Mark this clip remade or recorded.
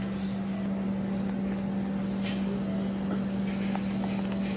recorded